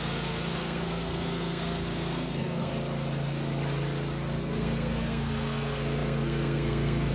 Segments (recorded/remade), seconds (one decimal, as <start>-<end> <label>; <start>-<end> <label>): 0.0-2.7 remade; 2.7-4.4 recorded; 4.4-7.1 remade